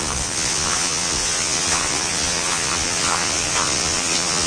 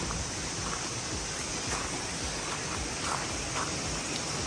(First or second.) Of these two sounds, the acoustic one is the second